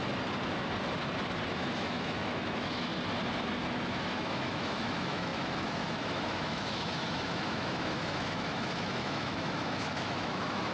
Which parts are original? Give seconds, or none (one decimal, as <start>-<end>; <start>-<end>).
0.0-1.5; 2.9-4.0